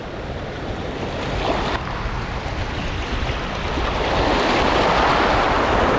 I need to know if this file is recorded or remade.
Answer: recorded